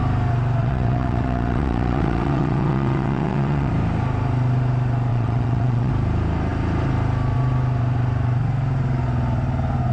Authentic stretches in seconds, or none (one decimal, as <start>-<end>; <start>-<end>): 0.0-0.6; 3.7-5.1; 5.9-9.9